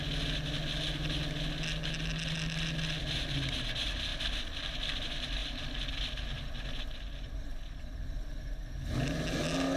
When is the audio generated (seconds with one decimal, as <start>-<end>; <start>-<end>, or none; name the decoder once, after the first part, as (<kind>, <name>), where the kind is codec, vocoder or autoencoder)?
none